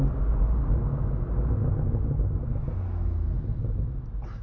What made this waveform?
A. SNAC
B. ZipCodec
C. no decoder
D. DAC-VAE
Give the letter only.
C